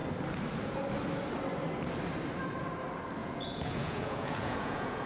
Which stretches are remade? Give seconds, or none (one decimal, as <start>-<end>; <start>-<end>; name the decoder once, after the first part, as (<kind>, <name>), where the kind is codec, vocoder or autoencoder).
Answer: 3.2-5.1 (vocoder, Vocos)